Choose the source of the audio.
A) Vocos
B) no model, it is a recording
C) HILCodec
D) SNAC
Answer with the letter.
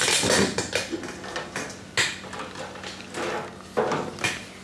B